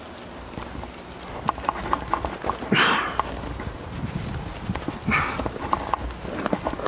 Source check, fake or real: real